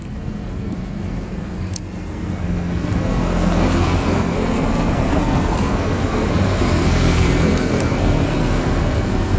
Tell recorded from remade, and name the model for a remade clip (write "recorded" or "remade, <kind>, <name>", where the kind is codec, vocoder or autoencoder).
remade, codec, SNAC